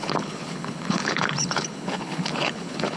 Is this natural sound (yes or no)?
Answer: no